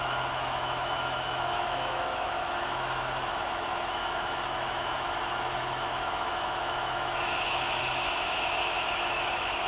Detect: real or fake fake